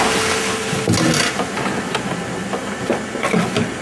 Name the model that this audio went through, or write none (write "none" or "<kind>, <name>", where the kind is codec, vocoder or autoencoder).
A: none